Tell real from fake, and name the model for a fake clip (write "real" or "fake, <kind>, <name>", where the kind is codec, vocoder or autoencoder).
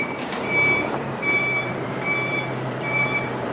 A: fake, vocoder, BigVGAN v2